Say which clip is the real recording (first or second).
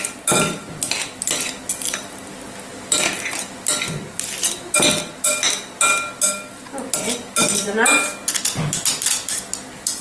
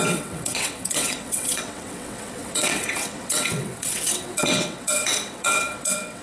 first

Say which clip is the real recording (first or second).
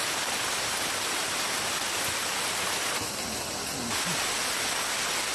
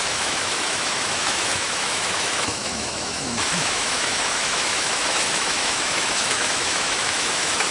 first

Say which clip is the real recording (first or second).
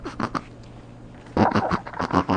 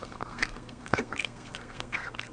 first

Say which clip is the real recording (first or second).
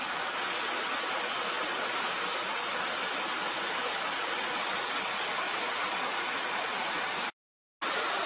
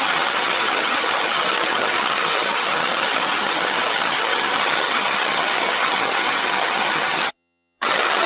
first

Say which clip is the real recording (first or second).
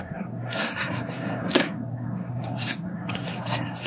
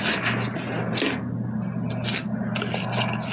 second